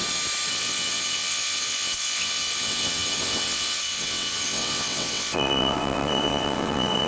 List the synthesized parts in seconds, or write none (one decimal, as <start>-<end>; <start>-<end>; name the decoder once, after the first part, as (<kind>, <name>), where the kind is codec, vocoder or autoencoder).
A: 0.5-7.1 (vocoder, WaveNeXt)